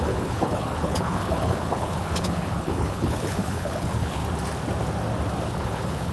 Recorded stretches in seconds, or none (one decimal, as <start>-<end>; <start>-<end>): 4.2-5.5